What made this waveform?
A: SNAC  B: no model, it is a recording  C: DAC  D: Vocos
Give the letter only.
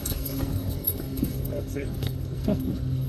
A